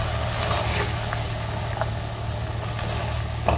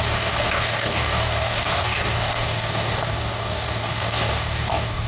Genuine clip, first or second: first